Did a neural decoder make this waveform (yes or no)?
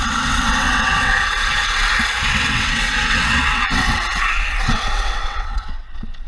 yes